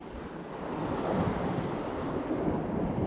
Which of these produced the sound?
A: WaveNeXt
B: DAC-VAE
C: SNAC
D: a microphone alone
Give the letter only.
D